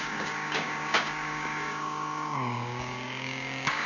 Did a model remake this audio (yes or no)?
yes